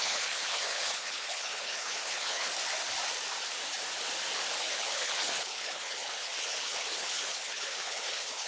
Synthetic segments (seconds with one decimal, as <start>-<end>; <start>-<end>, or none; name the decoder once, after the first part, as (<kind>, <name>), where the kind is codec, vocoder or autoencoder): 0.0-2.5 (codec, HILCodec); 4.6-8.5